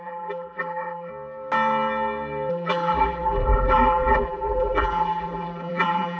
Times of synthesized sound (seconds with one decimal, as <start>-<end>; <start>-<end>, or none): 0.0-1.1; 2.5-6.2